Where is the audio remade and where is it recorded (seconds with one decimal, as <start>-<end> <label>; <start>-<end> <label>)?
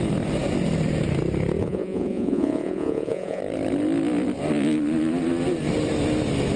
0.0-1.6 recorded; 1.6-3.4 remade; 3.4-6.6 recorded